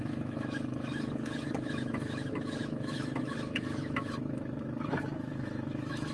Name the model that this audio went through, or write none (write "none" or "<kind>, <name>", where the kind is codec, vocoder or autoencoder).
autoencoder, DAC-VAE